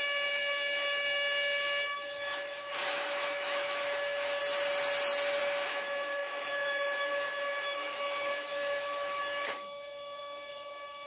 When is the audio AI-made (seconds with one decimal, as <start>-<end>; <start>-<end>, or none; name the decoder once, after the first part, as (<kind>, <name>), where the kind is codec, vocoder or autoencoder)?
0.0-4.4 (autoencoder, DAC-VAE); 5.4-11.1

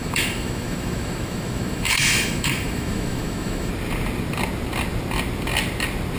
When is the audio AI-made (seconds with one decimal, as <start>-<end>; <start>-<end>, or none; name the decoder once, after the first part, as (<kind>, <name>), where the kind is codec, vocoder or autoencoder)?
0.0-3.7 (autoencoder, DAC-VAE)

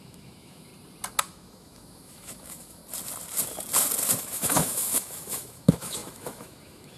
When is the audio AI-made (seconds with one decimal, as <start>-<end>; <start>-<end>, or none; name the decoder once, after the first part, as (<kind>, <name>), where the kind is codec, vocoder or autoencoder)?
0.0-0.7 (autoencoder, DAC-VAE); 1.3-2.8; 4.2-7.0

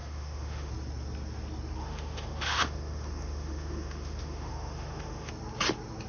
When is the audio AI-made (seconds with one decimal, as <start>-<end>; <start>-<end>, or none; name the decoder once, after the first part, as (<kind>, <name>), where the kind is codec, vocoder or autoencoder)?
0.0-0.7 (autoencoder, DAC-VAE); 1.8-5.3

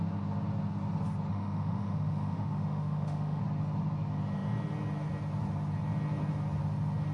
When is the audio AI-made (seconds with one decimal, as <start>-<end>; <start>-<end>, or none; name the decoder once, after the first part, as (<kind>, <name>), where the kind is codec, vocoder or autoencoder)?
1.3-3.4 (autoencoder, DAC-VAE)

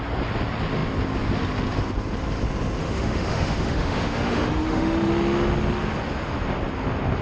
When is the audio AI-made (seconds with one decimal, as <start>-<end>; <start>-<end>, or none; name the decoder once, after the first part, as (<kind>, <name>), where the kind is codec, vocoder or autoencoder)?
2.8-5.1 (autoencoder, DAC-VAE)